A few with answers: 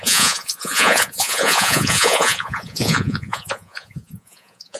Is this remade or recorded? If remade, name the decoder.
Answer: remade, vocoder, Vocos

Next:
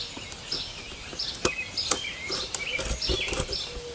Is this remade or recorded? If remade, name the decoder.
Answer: remade, vocoder, BigVGAN v2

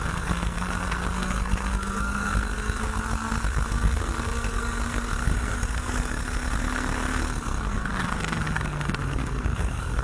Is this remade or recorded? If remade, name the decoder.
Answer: remade, codec, SNAC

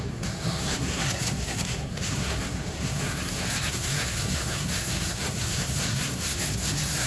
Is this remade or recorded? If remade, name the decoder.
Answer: remade, codec, SNAC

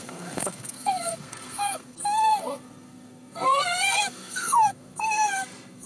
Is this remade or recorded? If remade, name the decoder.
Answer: remade, codec, SNAC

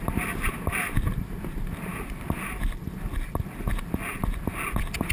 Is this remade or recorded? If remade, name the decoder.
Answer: recorded